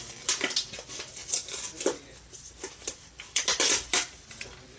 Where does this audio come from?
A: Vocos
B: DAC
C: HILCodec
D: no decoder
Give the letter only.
D